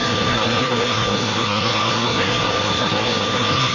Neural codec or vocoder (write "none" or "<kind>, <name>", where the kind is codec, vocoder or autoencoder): codec, SNAC